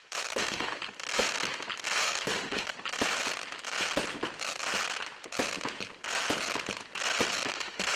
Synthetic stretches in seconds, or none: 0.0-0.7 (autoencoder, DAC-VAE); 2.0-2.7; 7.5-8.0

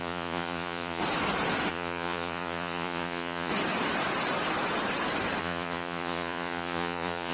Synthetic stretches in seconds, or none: 0.0-1.0 (vocoder, Vocos); 1.7-3.5; 5.4-7.3